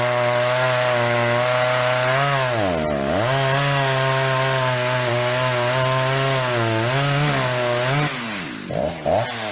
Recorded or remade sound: recorded